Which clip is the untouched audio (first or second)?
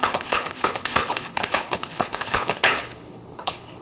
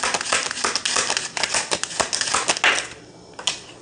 second